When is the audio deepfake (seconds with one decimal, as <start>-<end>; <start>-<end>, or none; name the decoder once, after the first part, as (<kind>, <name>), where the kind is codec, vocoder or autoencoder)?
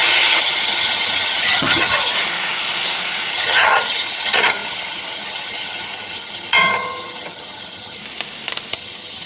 0.0-2.1 (vocoder, HiFi-GAN); 3.3-8.0; 8.7-9.3